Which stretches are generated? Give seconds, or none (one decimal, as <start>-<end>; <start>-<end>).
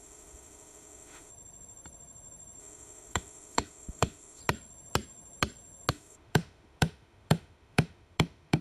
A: 0.0-1.3; 2.6-4.4; 5.9-8.6